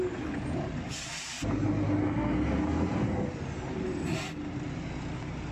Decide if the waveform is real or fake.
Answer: real